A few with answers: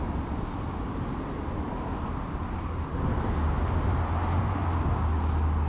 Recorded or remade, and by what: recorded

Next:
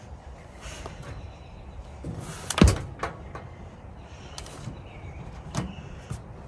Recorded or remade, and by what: recorded